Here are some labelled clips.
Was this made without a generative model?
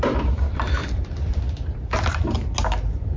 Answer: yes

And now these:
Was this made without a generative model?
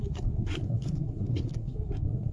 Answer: no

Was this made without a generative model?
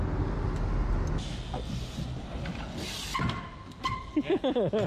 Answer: yes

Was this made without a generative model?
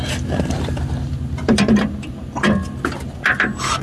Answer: yes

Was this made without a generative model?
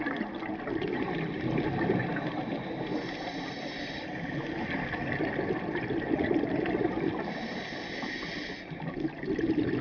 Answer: yes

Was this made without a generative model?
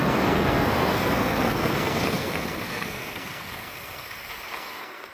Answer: no